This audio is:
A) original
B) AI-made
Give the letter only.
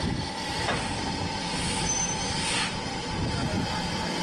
A